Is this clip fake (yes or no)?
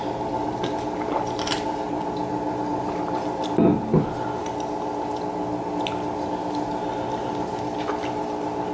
no